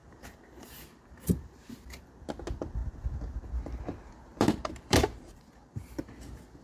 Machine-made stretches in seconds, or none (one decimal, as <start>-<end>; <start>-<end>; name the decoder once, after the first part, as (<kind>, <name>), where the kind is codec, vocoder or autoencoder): 0.0-2.0 (vocoder, BigVGAN v2); 4.3-6.1